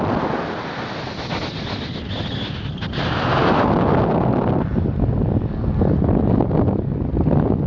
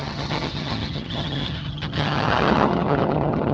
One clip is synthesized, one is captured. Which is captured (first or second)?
first